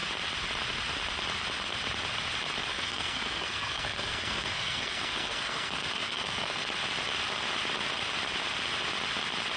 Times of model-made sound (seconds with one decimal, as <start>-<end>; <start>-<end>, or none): 2.7-6.7